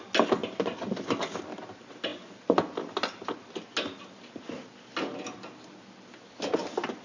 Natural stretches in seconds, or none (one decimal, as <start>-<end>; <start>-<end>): 0.0-7.0